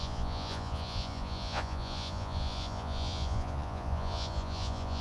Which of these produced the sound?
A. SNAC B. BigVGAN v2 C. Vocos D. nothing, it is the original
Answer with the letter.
C